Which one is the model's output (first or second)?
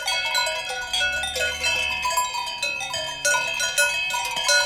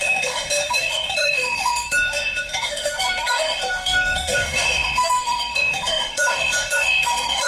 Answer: second